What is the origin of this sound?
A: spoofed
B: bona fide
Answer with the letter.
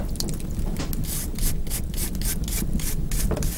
B